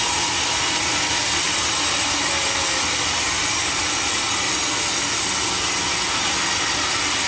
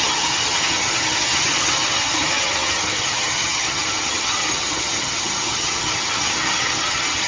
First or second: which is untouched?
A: first